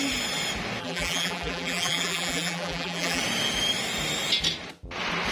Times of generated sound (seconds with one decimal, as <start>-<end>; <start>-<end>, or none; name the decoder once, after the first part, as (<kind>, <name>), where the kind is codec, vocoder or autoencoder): 0.8-3.2 (vocoder, BigVGAN v2)